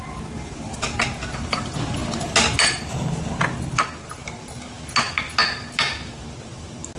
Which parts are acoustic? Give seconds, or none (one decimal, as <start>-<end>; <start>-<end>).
0.0-7.0